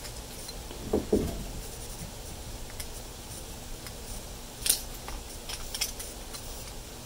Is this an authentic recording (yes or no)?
yes